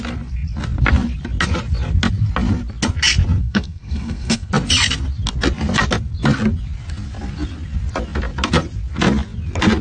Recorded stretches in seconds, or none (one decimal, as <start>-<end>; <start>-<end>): 0.0-3.4; 4.5-9.8